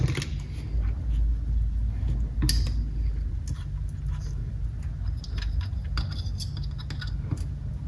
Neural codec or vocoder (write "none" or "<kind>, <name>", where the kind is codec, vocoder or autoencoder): none